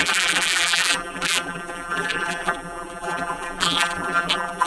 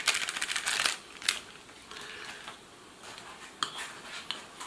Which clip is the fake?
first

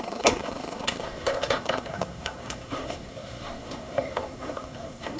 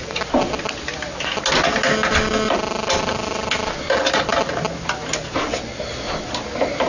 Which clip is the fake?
first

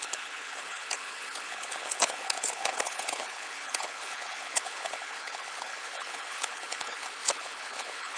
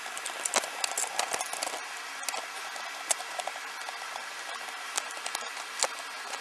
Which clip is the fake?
first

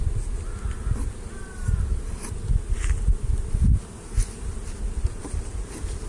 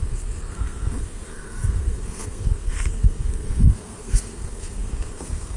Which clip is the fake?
second